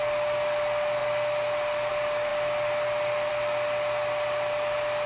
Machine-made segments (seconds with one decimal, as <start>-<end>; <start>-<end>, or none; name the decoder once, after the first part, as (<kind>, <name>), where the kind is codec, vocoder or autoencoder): none